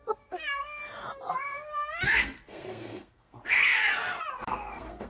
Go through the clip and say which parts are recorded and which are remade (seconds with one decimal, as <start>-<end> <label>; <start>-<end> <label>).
0.0-0.8 remade; 0.8-1.3 recorded; 1.3-3.8 remade; 3.8-4.4 recorded; 4.4-5.1 remade